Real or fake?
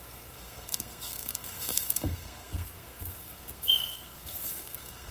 fake